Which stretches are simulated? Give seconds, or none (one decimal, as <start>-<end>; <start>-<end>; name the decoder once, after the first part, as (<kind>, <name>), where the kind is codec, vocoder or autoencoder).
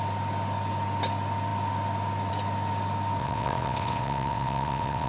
3.2-5.1 (vocoder, WaveNeXt)